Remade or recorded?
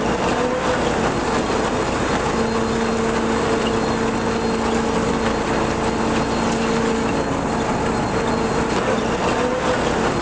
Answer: recorded